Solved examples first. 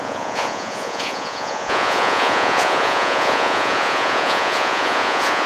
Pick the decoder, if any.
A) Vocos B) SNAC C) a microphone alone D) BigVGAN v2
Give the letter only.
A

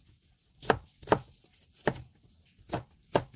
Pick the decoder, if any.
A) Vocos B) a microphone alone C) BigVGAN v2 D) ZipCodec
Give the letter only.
B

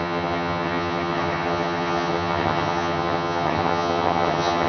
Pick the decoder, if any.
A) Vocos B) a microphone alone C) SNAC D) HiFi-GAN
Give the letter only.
D